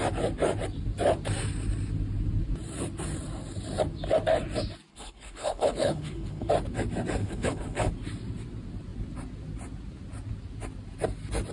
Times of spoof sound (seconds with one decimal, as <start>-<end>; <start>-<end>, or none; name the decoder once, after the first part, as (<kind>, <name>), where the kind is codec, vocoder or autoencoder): 4.9-6.5 (codec, HILCodec); 7.2-7.9